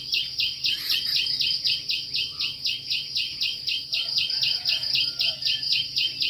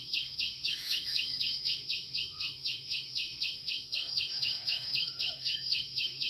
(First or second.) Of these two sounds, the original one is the first